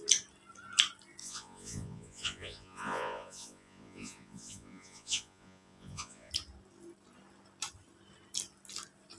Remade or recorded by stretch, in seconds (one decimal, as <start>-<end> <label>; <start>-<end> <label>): 0.0-1.2 recorded; 1.2-6.3 remade; 6.3-9.2 recorded